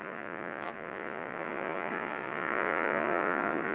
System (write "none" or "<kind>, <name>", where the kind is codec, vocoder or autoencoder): vocoder, Vocos